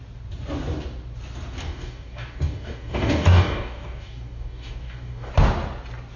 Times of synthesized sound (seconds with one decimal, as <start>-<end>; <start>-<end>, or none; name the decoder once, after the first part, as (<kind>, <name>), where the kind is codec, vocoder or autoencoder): 1.6-5.3 (codec, DAC)